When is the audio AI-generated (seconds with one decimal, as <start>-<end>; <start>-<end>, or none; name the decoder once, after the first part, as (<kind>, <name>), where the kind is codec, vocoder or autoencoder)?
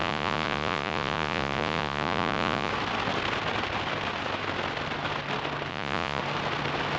0.0-2.7 (vocoder, Vocos); 5.7-6.2